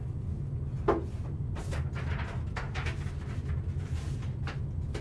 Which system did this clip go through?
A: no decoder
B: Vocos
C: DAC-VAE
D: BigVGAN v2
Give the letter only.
A